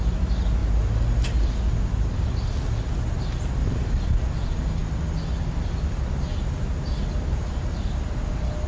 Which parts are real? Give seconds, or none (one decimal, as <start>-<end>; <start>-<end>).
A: 0.0-8.7